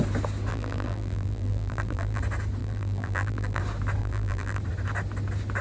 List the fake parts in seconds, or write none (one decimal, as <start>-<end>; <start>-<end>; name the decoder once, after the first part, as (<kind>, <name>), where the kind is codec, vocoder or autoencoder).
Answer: 0.5-2.2 (vocoder, BigVGAN v2); 2.6-3.6; 4.0-4.6